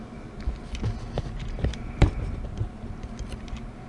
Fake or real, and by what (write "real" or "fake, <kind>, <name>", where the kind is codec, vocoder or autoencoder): real